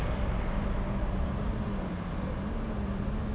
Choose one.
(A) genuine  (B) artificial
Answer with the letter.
A